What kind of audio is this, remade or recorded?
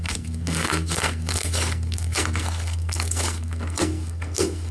remade